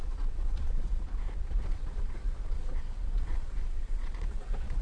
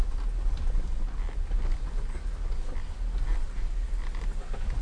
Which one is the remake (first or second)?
first